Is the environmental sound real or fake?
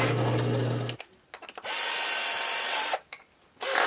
real